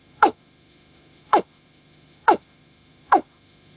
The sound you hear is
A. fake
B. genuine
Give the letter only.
A